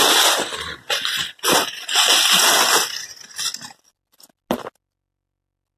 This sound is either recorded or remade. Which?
recorded